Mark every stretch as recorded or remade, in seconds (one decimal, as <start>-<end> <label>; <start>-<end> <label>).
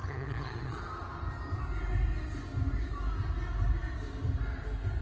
0.0-0.8 remade; 0.8-5.0 recorded